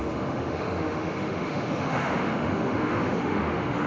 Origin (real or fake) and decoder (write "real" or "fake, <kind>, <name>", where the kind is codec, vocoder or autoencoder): fake, autoencoder, DAC-VAE